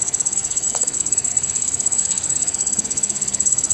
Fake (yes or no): yes